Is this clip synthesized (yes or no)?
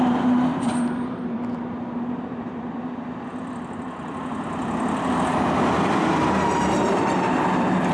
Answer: yes